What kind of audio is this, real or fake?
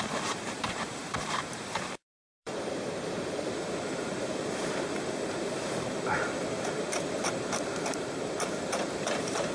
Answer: fake